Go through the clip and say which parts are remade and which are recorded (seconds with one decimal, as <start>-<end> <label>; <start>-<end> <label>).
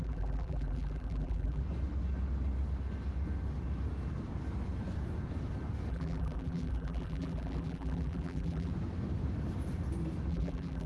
0.0-1.6 remade; 1.6-5.9 recorded; 5.9-8.7 remade; 8.7-10.3 recorded; 10.3-10.9 remade